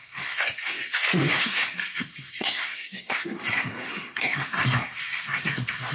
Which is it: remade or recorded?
remade